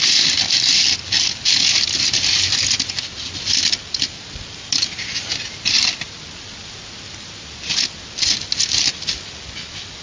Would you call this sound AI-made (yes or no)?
no